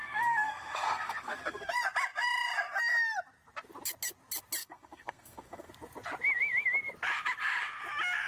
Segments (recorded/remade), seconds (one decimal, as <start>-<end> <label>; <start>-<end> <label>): 0.0-1.7 remade; 1.7-4.6 recorded; 4.6-5.7 remade; 5.7-8.3 recorded